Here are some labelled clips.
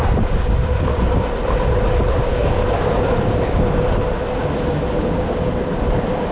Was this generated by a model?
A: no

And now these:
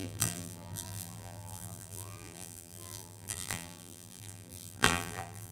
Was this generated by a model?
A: yes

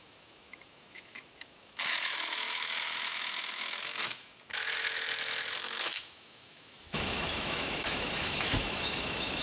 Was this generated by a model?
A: yes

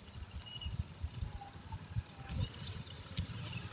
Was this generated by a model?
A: no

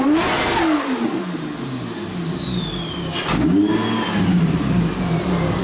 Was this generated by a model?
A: no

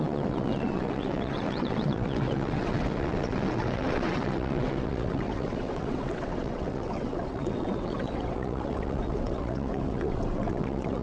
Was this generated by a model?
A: yes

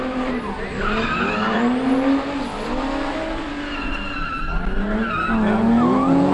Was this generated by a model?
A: no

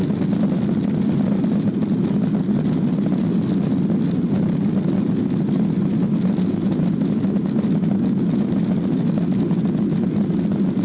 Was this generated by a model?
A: no